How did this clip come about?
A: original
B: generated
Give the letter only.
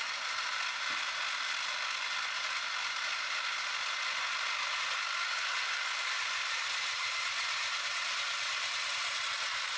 A